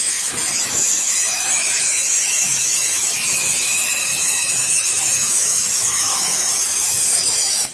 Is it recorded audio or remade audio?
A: remade